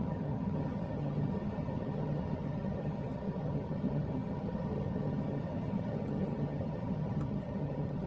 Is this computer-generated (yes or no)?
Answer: yes